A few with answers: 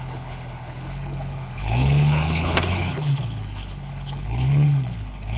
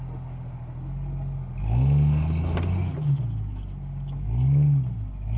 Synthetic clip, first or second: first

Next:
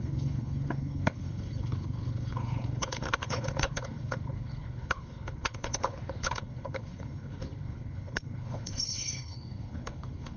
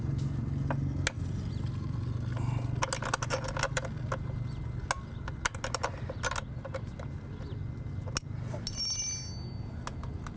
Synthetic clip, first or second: first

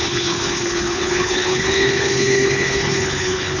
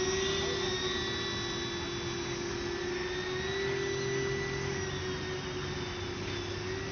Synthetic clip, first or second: first